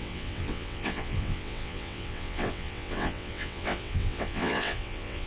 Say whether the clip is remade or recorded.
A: remade